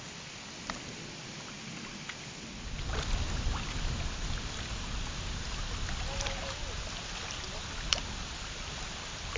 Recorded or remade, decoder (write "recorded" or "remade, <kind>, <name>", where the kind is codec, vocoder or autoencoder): recorded